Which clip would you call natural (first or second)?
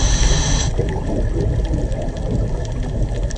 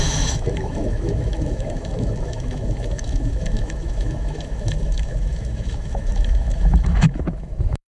first